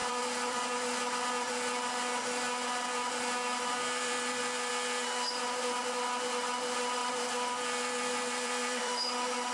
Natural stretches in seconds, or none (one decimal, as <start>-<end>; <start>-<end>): 0.6-3.7; 4.7-7.0; 9.0-9.5